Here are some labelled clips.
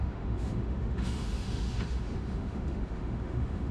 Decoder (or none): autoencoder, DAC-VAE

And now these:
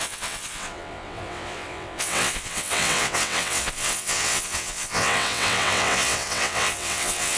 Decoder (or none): vocoder, WaveNeXt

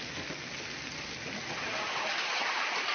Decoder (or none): none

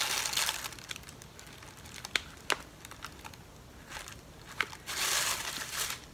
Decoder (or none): none